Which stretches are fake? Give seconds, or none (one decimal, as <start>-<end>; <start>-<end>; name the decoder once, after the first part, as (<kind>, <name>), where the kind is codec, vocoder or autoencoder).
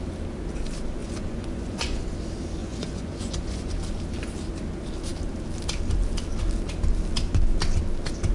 1.0-2.0 (vocoder, Vocos); 2.6-3.7